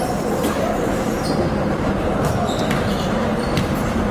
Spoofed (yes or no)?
no